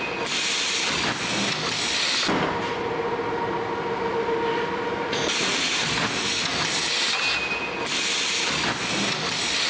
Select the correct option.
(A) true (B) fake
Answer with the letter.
A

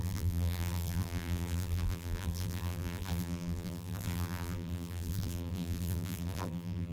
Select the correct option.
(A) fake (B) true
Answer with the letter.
A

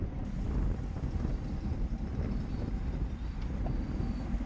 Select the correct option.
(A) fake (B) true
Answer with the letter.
B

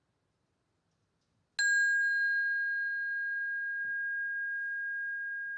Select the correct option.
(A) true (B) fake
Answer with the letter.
A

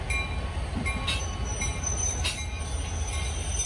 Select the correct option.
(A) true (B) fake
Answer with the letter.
A